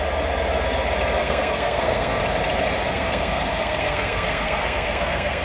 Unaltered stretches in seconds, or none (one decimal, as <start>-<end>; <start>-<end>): 0.0-1.2; 2.2-2.9